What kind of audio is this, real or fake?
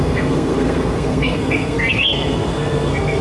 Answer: fake